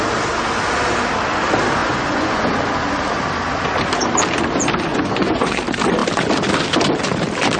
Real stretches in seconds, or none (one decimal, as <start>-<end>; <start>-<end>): 0.0-1.8; 2.5-4.9; 5.6-7.6